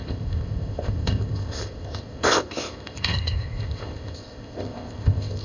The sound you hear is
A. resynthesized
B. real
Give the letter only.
A